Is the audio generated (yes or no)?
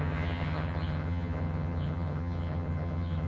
yes